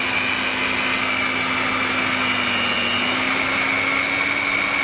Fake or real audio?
real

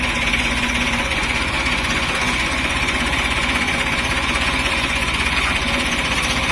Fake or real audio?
fake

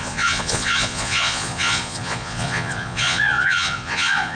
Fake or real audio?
fake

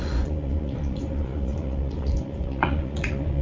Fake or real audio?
fake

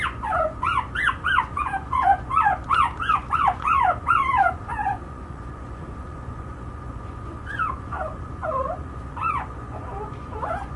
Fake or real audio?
fake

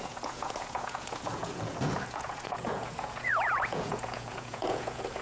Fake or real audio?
fake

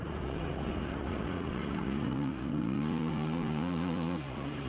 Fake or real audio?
fake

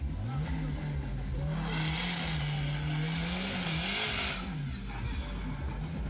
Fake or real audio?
real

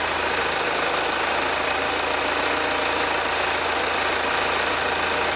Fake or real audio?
real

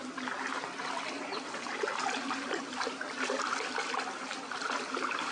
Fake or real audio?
real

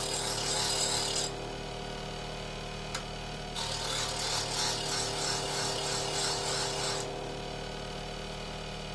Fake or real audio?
real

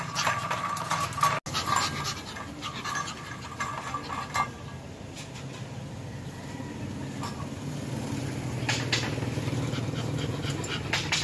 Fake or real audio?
real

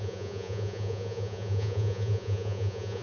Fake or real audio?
fake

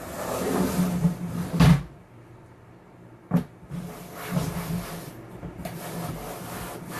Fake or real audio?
real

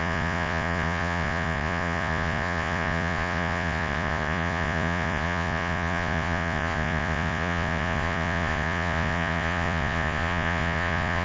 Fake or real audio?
fake